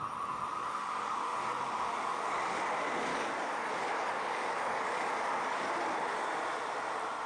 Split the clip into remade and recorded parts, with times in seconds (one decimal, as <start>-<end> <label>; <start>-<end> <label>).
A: 0.0-0.5 recorded; 0.5-2.6 remade; 2.6-3.1 recorded; 3.1-5.7 remade; 5.7-7.3 recorded